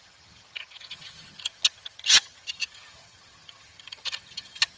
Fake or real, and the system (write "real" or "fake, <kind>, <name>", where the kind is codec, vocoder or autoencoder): fake, vocoder, HiFi-GAN